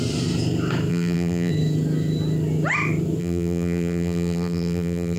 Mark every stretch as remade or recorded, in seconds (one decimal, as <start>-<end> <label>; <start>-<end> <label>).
0.0-0.9 recorded; 0.9-1.5 remade; 1.5-3.2 recorded; 3.2-5.2 remade